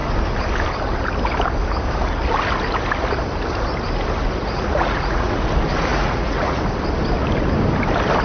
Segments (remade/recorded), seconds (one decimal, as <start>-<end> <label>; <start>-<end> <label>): 0.0-4.4 recorded; 4.4-5.4 remade; 5.4-5.9 recorded; 5.9-6.6 remade; 6.6-8.2 recorded